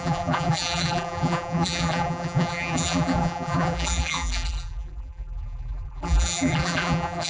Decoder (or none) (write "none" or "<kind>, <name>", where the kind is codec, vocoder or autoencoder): vocoder, BigVGAN v2